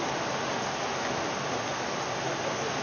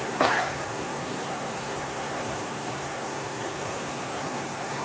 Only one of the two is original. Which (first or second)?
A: first